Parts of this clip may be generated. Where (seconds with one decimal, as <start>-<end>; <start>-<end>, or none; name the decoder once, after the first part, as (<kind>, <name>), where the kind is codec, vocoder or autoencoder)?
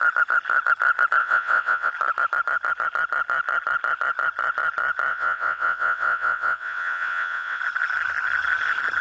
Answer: 1.2-1.9 (vocoder, WaveNeXt); 5.1-7.6